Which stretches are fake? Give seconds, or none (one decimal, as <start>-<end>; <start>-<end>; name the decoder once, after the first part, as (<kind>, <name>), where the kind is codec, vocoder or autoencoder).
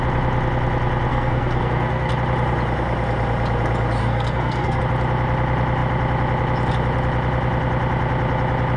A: 1.1-2.1 (codec, SNAC); 4.0-4.8